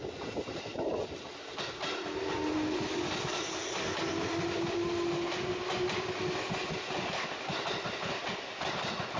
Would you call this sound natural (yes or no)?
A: yes